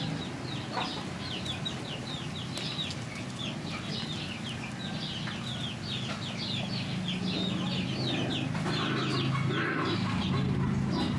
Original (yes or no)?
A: yes